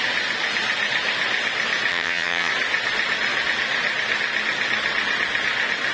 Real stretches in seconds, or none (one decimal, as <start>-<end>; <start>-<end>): 0.0-1.9; 2.5-5.9